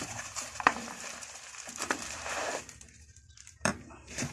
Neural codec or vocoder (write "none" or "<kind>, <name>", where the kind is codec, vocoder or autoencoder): vocoder, BigVGAN v2